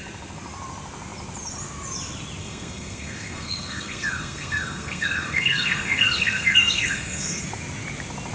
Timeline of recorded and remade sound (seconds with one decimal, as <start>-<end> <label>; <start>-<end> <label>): 0.0-2.4 recorded; 2.4-7.4 remade; 7.4-8.3 recorded